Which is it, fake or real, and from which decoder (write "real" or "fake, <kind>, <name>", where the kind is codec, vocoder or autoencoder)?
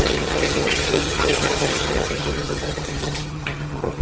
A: fake, vocoder, HiFi-GAN